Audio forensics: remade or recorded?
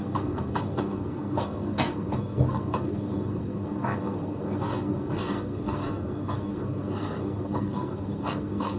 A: remade